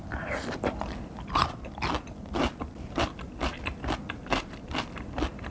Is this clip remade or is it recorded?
recorded